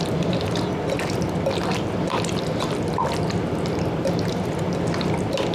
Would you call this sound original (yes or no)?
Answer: yes